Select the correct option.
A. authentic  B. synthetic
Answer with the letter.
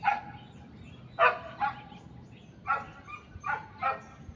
A